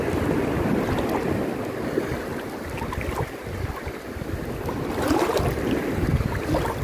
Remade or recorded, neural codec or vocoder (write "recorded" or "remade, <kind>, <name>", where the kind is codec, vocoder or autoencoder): recorded